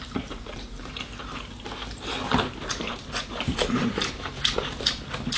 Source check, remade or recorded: remade